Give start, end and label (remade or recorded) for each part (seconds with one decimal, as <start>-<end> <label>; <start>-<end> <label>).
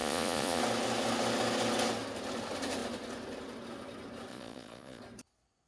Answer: 0.0-0.6 remade; 0.6-4.3 recorded; 4.3-5.0 remade; 5.0-5.7 recorded